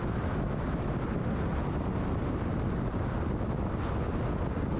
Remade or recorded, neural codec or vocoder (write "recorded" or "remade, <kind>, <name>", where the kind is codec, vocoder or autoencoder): recorded